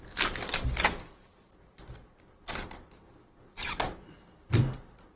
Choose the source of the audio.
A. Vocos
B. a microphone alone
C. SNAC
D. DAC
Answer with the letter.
B